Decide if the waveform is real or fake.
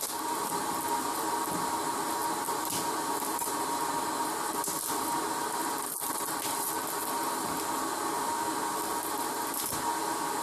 real